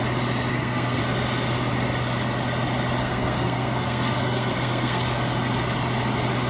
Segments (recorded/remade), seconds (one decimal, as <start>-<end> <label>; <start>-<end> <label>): 0.0-0.5 recorded; 0.5-1.0 remade; 1.0-3.0 recorded; 3.0-5.0 remade; 5.0-6.5 recorded